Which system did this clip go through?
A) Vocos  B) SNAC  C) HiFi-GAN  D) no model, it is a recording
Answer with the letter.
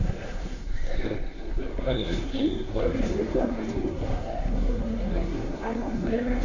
B